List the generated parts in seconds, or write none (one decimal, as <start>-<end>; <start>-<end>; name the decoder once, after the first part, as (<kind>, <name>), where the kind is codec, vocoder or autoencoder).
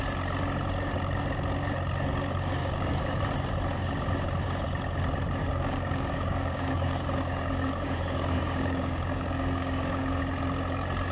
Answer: 2.6-3.2 (codec, DAC); 5.4-10.2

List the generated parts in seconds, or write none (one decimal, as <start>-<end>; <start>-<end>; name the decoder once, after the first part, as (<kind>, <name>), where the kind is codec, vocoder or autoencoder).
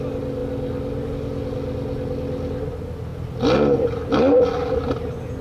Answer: none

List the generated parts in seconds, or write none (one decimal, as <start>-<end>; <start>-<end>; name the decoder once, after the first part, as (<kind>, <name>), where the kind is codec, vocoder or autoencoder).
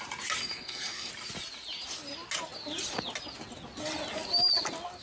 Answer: 0.4-1.1 (codec, SNAC)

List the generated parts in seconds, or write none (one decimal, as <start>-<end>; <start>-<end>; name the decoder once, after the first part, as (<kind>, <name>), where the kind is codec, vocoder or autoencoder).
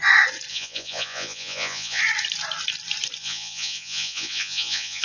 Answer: 0.5-2.0 (vocoder, Vocos); 3.2-5.0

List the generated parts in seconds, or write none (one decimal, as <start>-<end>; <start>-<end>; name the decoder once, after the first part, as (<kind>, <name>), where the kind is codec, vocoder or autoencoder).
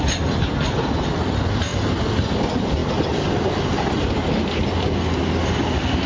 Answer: none